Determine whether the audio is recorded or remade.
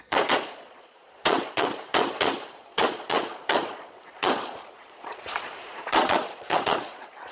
remade